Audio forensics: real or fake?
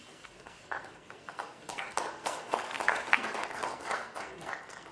fake